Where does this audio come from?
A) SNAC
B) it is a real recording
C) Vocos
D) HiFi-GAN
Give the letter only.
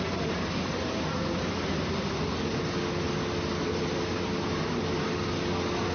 B